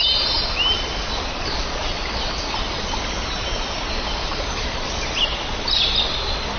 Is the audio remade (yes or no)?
no